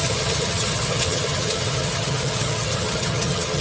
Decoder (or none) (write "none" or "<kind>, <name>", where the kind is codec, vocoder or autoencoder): vocoder, HiFi-GAN